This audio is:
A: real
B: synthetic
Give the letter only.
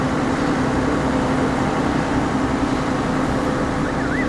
A